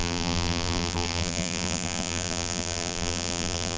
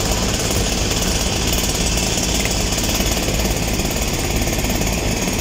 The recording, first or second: second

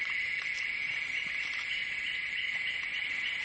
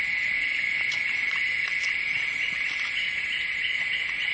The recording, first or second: second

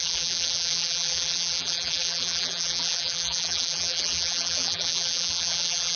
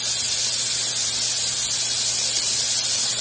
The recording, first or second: second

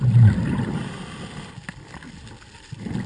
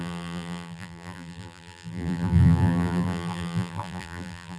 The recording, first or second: first